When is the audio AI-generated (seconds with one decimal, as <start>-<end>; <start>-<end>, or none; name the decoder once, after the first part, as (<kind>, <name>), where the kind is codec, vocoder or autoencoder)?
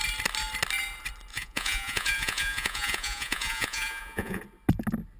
1.3-4.4 (vocoder, Vocos)